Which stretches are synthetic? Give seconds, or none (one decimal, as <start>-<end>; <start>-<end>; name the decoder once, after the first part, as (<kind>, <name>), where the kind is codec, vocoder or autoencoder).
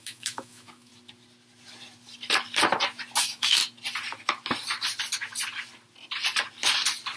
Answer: 0.0-0.9 (autoencoder, DAC-VAE); 3.2-3.6